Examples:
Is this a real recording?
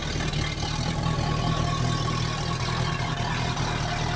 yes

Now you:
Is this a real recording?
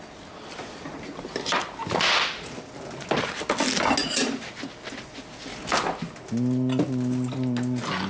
yes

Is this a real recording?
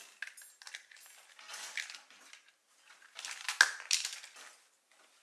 yes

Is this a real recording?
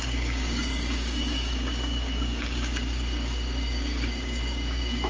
no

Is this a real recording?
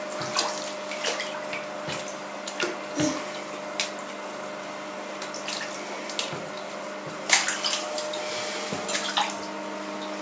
yes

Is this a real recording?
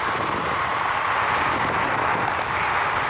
yes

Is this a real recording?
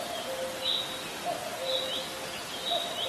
yes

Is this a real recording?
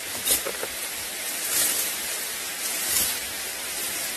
yes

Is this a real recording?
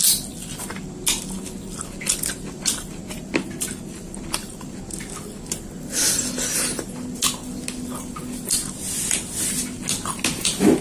yes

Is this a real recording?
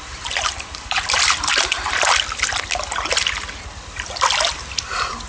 yes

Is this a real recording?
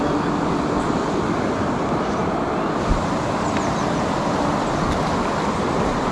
yes